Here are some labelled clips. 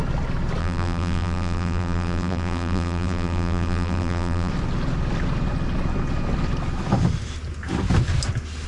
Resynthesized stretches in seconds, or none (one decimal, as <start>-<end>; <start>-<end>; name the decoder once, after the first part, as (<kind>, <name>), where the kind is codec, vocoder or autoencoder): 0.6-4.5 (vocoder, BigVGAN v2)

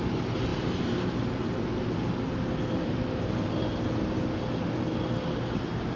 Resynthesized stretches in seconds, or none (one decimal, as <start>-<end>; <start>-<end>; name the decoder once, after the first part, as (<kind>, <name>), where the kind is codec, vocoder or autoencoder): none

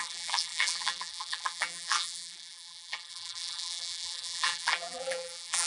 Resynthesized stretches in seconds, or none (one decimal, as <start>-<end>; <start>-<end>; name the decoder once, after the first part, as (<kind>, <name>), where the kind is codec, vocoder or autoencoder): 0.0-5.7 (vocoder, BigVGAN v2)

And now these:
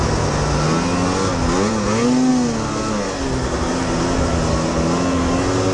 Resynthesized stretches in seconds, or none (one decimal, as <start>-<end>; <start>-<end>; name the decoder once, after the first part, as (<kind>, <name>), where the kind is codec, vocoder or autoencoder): none

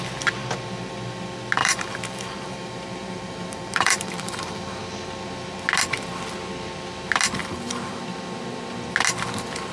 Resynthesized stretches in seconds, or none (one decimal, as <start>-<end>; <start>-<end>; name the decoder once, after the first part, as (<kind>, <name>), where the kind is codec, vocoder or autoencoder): 1.6-4.8 (vocoder, BigVGAN v2); 7.4-8.0